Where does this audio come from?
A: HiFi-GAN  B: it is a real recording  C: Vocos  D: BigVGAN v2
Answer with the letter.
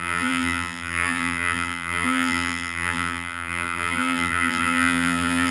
D